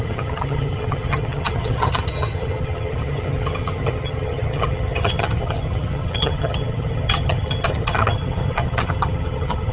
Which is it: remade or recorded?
remade